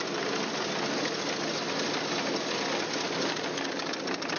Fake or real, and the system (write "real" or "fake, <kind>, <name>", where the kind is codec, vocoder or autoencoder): real